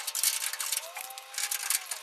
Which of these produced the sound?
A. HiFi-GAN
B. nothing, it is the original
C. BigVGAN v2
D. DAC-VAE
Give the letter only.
B